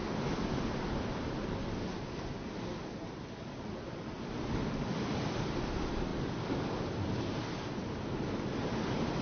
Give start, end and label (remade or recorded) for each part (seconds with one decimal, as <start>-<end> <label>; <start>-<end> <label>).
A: 0.0-9.2 recorded